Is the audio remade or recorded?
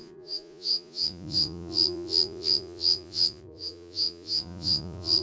remade